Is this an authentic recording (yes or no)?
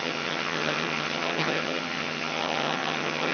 no